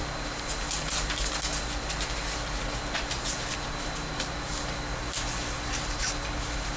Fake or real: real